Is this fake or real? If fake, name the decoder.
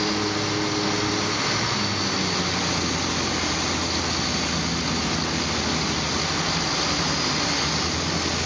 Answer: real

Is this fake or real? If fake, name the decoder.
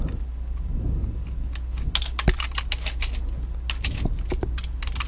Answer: real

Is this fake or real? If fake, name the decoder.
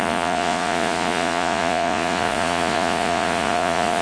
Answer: fake, vocoder, Vocos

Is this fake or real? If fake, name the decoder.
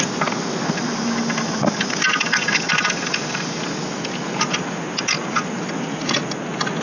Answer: real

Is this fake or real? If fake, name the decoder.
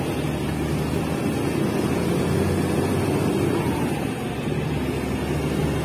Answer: real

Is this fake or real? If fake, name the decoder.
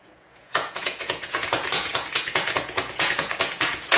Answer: fake, vocoder, Vocos